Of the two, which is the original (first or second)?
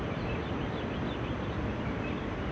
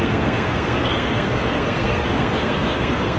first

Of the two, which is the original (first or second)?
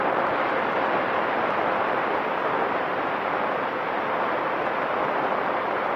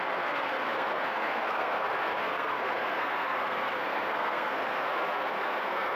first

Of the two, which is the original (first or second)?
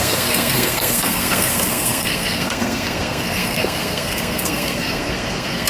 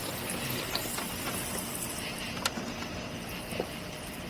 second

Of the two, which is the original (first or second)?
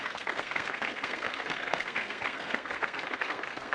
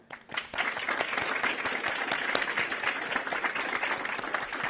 second